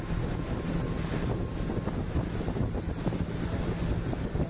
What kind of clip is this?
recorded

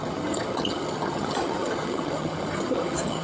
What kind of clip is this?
remade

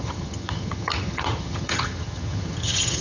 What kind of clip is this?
remade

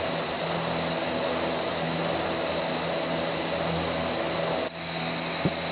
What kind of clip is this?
recorded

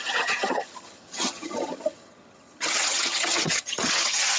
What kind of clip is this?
remade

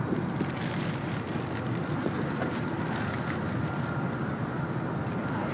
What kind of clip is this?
recorded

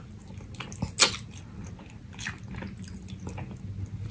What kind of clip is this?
recorded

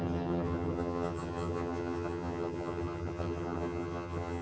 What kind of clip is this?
remade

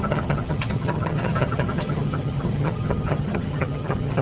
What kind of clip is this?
remade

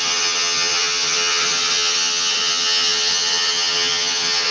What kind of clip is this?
remade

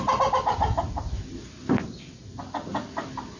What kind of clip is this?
recorded